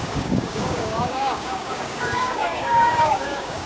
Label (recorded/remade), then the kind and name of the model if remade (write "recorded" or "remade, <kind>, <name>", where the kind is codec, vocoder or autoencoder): remade, codec, DAC